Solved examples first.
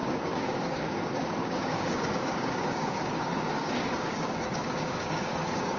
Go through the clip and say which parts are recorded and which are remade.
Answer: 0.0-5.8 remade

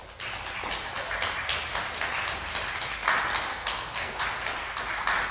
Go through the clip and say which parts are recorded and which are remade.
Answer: 0.0-3.5 recorded; 3.5-4.2 remade; 4.2-5.3 recorded

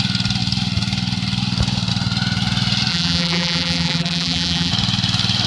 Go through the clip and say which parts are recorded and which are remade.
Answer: 0.0-2.9 recorded; 2.9-4.7 remade; 4.7-5.5 recorded

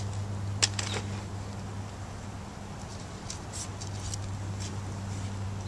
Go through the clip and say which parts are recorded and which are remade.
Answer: 0.0-5.7 recorded

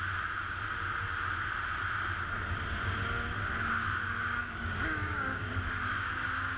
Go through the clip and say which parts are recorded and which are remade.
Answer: 0.0-3.8 recorded; 3.8-6.1 remade; 6.1-6.6 recorded

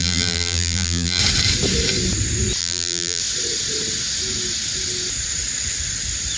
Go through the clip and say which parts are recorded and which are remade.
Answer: 0.0-1.2 remade; 1.2-2.6 recorded; 2.6-3.2 remade; 3.2-6.4 recorded